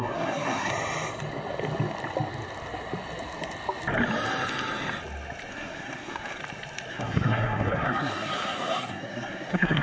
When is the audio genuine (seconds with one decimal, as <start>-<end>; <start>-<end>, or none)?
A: 0.7-5.5; 6.4-6.9